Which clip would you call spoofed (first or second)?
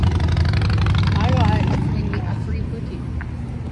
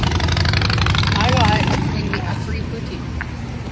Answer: second